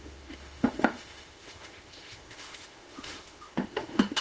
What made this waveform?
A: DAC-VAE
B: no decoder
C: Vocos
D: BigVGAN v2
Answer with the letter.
A